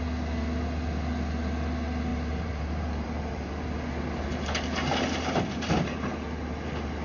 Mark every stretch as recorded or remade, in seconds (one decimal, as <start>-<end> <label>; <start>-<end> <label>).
0.0-2.1 recorded; 2.1-3.5 remade; 3.5-7.0 recorded